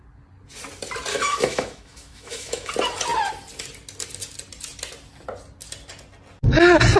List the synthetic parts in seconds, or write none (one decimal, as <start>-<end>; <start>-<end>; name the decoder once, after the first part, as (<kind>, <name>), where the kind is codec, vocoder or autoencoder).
1.1-2.7 (autoencoder, DAC-VAE)